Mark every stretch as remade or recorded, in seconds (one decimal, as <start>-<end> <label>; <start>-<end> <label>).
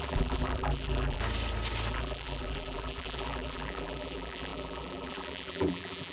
0.0-1.2 remade; 1.2-1.9 recorded; 1.9-6.1 remade